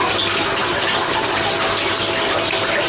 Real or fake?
real